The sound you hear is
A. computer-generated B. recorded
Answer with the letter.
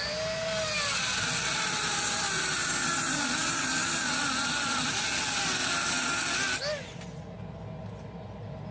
B